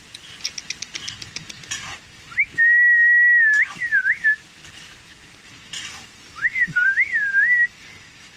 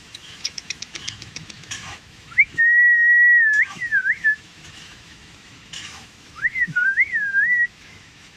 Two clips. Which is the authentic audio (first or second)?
first